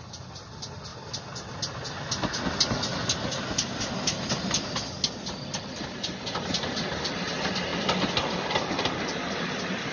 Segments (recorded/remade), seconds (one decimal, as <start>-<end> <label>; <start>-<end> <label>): 0.0-9.9 recorded